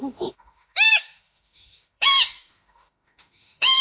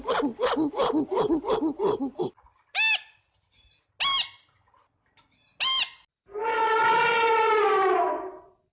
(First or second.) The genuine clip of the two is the second